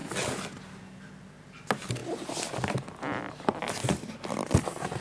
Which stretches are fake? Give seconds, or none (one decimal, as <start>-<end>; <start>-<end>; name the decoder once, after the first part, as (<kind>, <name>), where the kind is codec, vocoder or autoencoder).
none